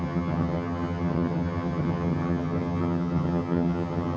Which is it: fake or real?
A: fake